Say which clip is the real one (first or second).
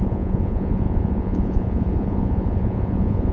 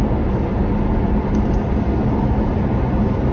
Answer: second